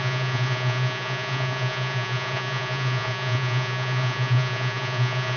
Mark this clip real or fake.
fake